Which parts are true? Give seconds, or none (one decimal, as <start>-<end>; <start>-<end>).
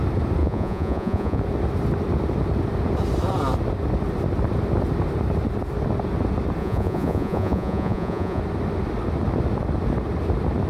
0.0-0.4; 1.4-6.6; 8.4-10.7